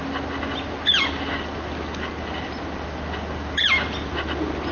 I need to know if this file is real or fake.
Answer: real